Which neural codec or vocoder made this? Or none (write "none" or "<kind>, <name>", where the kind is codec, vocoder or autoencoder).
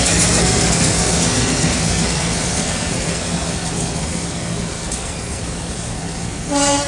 codec, SNAC